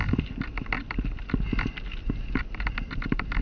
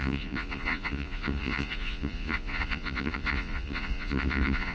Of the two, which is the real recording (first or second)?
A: first